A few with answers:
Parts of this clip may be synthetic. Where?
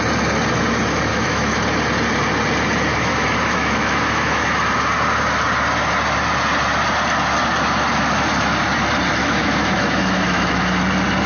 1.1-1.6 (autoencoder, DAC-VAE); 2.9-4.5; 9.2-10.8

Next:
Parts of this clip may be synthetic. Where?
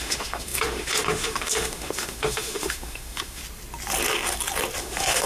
0.0-3.4 (autoencoder, DAC-VAE); 4.8-5.3